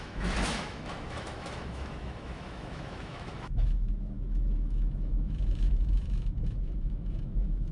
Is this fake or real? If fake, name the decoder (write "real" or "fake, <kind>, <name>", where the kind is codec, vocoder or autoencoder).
fake, autoencoder, DAC-VAE